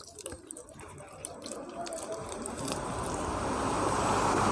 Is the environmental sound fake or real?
fake